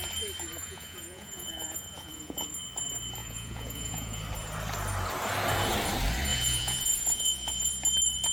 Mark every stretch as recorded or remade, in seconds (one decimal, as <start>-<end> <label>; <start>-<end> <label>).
0.0-0.6 recorded; 0.6-2.5 remade; 2.5-3.2 recorded; 3.2-4.2 remade; 4.2-6.3 recorded; 6.3-7.7 remade; 7.7-8.3 recorded